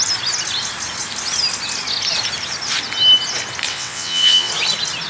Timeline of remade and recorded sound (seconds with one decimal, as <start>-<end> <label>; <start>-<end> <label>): 0.0-3.7 recorded; 3.7-4.5 remade; 4.5-5.1 recorded